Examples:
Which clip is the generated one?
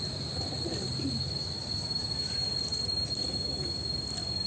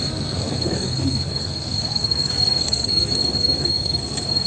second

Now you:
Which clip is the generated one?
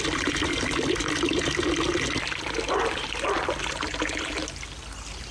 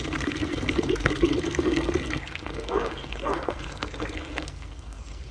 second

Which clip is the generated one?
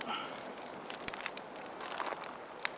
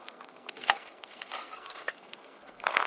second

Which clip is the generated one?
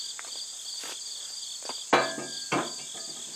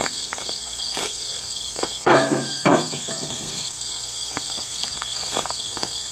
second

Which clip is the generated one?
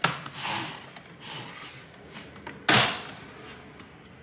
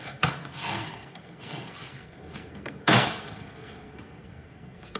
second